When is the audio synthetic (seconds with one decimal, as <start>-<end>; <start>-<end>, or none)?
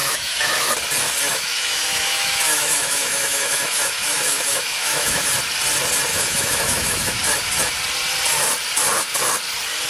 0.0-0.7; 1.3-5.3; 6.1-7.2